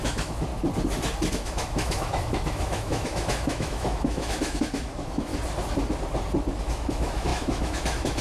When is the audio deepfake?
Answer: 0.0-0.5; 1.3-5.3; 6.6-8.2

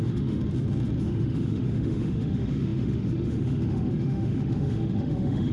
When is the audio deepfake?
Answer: 0.0-0.4; 1.0-5.5